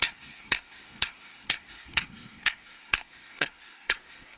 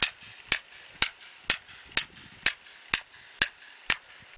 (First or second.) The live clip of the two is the second